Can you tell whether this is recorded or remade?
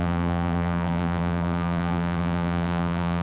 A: remade